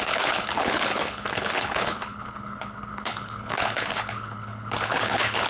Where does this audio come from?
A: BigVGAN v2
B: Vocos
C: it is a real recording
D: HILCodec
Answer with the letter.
D